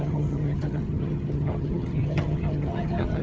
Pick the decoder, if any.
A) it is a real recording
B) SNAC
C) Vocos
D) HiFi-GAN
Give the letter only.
D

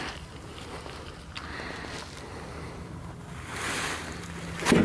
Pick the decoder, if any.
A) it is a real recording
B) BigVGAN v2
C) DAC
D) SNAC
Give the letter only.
A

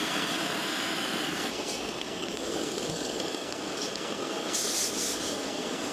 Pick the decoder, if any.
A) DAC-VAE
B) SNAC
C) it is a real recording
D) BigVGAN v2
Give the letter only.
B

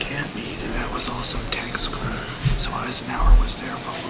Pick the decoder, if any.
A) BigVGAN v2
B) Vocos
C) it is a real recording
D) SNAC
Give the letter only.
C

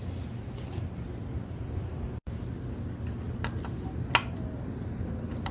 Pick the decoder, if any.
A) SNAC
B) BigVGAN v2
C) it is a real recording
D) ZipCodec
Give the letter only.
C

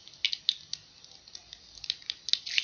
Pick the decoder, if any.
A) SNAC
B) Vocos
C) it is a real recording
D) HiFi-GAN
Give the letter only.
C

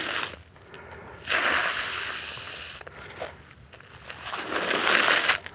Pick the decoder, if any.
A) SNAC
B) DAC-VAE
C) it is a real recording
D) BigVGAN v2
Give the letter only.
C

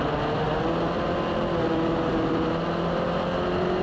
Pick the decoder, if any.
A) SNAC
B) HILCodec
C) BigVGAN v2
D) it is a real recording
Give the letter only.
D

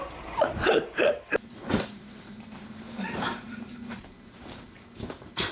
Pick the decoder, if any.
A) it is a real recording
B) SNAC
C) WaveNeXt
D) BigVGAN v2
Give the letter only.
D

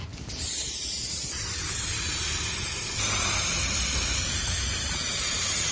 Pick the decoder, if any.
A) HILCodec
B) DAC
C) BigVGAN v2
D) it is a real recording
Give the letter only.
C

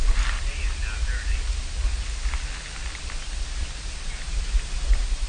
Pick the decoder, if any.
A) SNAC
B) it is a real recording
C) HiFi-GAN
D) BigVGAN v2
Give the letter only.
B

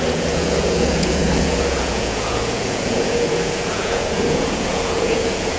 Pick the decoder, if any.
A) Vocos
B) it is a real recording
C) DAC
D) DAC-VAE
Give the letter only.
A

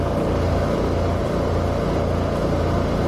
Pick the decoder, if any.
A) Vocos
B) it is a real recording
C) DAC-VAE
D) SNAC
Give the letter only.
B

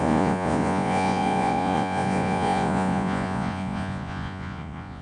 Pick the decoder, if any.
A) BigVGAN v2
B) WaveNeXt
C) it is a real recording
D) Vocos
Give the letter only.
D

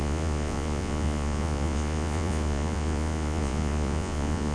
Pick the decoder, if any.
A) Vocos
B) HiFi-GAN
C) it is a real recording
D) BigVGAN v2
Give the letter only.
A